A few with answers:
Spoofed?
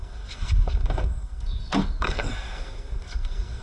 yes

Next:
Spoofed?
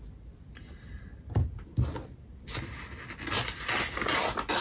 no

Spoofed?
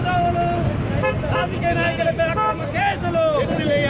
no